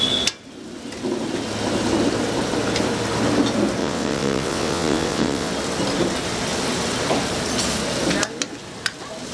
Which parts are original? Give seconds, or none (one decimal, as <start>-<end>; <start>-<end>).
0.0-3.8; 5.5-9.3